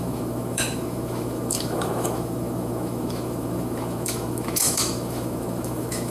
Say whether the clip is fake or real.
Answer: fake